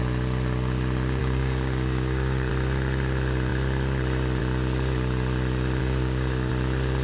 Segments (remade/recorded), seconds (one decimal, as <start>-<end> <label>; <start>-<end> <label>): 0.0-1.2 recorded; 1.2-2.5 remade; 2.5-5.8 recorded; 5.8-6.5 remade; 6.5-7.0 recorded